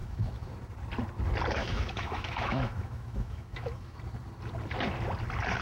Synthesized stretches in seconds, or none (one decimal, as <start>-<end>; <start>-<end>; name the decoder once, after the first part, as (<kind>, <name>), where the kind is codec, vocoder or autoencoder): 0.0-0.5 (autoencoder, DAC-VAE); 1.6-4.0